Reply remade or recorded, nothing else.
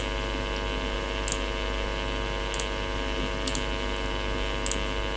recorded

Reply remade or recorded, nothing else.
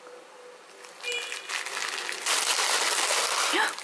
recorded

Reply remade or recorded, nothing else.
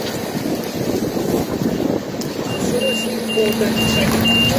recorded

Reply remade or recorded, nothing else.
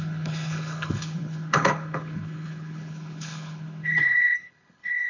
remade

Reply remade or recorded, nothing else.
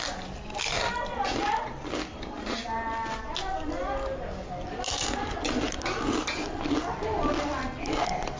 recorded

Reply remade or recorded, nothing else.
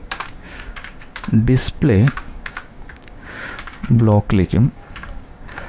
remade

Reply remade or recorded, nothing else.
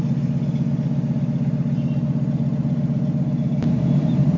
recorded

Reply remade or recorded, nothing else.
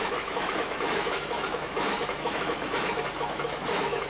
remade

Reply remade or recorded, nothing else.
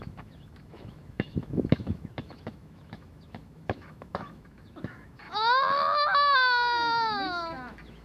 remade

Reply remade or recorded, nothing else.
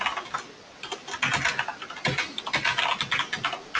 recorded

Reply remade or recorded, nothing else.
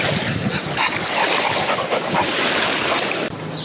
recorded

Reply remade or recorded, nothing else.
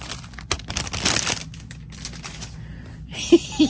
recorded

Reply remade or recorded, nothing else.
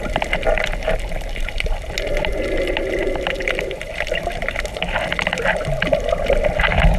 recorded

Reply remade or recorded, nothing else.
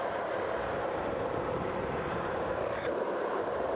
remade